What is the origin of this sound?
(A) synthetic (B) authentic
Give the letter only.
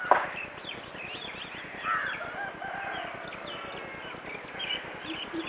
B